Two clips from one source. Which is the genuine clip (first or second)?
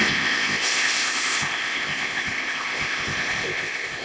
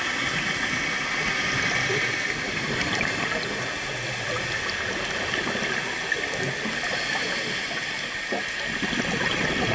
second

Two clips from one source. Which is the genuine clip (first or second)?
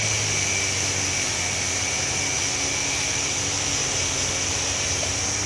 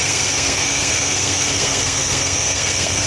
first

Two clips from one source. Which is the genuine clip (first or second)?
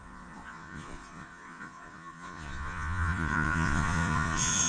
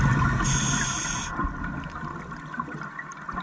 second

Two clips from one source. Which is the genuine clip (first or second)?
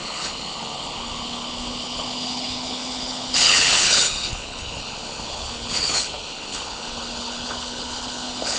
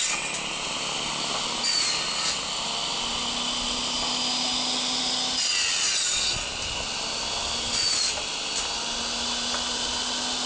second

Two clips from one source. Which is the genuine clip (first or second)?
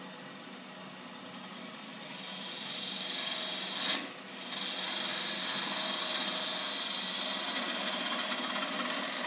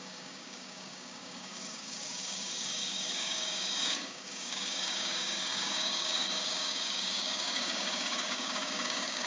first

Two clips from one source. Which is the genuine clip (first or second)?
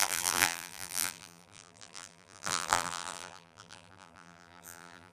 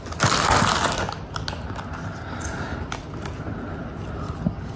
second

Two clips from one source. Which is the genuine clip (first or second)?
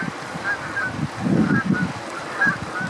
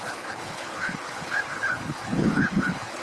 first